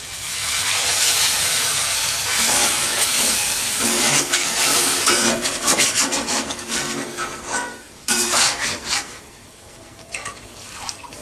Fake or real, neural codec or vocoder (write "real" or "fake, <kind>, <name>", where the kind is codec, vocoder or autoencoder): fake, codec, SNAC